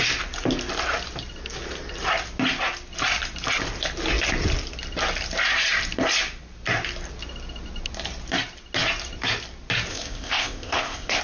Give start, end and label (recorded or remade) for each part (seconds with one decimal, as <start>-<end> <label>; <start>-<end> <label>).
0.0-9.9 recorded; 9.9-11.2 remade